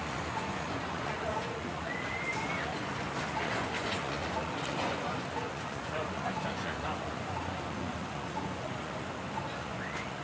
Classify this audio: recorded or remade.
remade